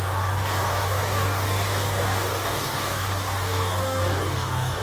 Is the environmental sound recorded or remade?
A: remade